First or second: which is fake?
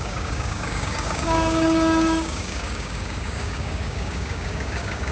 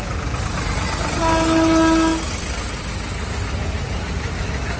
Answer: first